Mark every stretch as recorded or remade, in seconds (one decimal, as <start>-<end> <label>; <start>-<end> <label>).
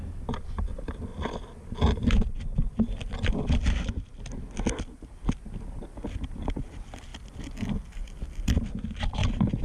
0.0-9.6 recorded